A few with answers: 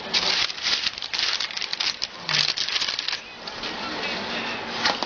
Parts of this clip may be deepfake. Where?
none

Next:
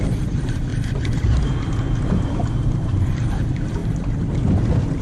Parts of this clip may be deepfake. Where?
0.0-0.7; 2.6-3.8

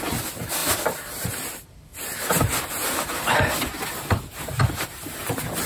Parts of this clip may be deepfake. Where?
0.6-1.5; 1.9-5.3

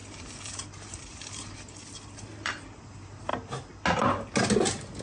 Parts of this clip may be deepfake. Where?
0.0-3.3

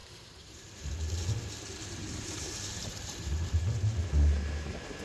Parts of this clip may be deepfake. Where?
0.0-0.9; 1.8-3.8

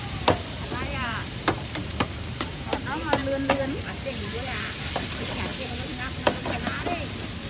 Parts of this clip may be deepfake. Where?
0.0-5.5